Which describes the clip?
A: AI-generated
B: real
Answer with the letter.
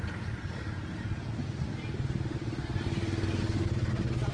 B